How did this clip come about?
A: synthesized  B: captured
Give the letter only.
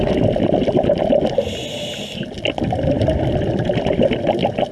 B